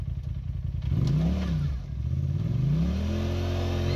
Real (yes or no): yes